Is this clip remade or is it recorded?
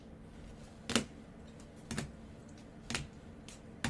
recorded